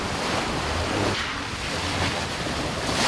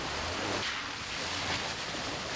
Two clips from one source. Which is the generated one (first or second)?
first